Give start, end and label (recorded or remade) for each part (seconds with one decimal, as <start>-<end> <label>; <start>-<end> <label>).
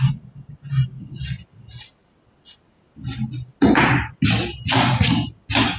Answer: 0.0-5.8 recorded